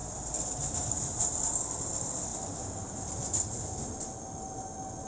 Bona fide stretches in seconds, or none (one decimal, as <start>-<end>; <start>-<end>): 0.0-5.1